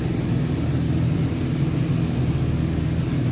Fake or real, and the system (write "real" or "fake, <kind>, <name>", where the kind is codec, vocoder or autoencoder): real